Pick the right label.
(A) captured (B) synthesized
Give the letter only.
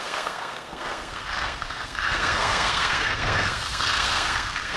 B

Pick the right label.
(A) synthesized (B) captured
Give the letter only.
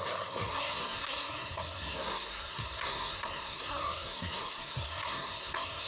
A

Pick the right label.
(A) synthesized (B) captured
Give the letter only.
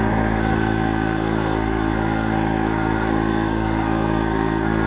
A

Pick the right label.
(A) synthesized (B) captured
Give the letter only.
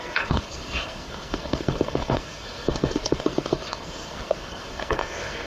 A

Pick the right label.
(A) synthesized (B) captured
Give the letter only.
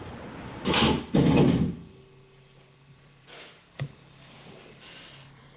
A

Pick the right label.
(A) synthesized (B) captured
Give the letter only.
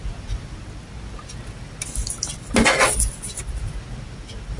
B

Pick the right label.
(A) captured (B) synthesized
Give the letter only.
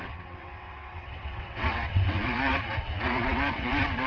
B